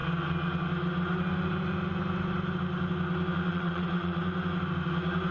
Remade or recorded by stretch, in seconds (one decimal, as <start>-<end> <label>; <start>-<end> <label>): 0.0-3.5 recorded; 3.5-4.2 remade; 4.2-5.3 recorded